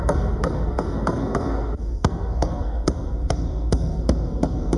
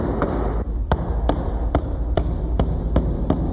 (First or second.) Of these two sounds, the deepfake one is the first